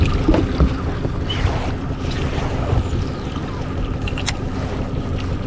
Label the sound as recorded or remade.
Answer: recorded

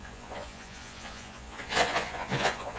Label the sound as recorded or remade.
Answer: remade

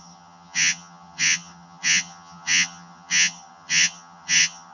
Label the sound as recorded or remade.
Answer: remade